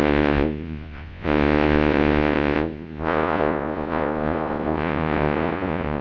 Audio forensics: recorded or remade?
remade